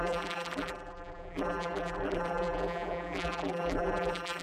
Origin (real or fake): fake